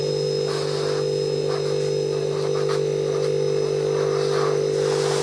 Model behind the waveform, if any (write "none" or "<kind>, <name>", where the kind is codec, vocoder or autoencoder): none